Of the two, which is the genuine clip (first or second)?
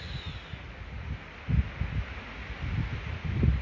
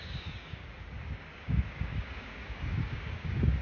first